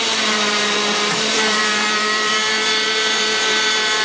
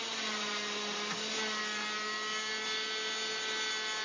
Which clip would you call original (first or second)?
second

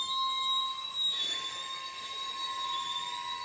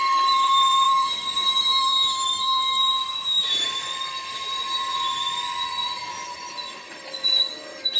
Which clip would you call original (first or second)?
first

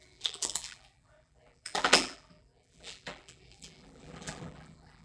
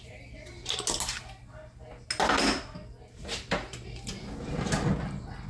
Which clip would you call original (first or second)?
second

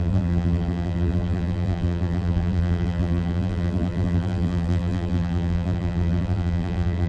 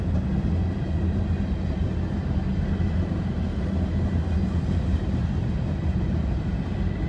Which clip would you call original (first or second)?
second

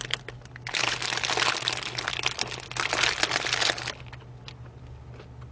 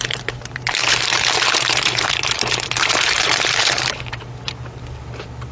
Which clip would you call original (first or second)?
first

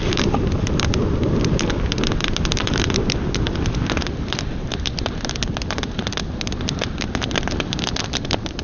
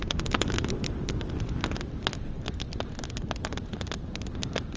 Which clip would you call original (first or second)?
second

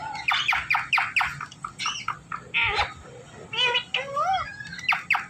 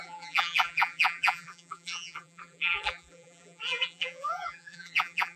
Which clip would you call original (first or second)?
first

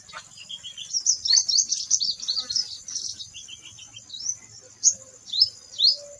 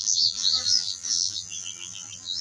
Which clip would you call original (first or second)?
first